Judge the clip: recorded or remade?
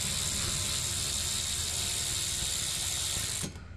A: recorded